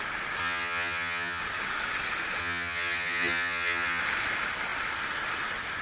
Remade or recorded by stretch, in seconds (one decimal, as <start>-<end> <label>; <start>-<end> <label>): 0.0-0.4 recorded; 0.4-1.4 remade; 1.4-2.4 recorded; 2.4-4.0 remade; 4.0-5.8 recorded